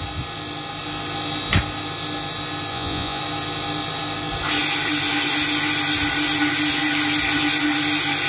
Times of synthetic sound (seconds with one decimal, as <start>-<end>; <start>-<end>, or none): 2.7-3.2